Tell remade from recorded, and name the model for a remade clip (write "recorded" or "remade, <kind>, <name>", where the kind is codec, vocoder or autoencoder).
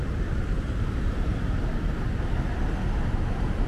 recorded